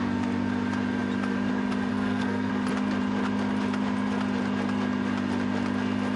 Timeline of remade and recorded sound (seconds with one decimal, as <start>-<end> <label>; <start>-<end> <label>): 0.0-1.9 recorded; 1.9-2.5 remade; 2.5-6.2 recorded